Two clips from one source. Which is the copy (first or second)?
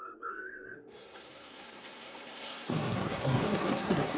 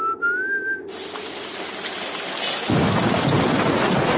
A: first